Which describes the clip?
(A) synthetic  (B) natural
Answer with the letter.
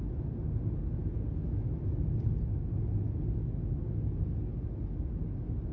B